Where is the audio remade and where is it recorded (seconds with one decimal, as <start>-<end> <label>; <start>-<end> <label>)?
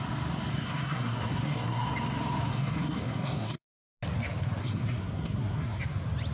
0.0-0.5 recorded; 0.5-1.9 remade; 1.9-2.5 recorded; 2.5-3.8 remade; 3.8-4.6 recorded; 4.6-5.8 remade; 5.8-6.3 recorded